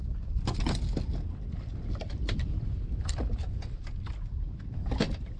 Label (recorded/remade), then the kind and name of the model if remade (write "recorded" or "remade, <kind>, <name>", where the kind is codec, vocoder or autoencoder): recorded